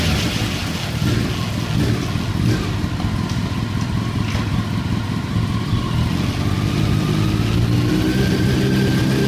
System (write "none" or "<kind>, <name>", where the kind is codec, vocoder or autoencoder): none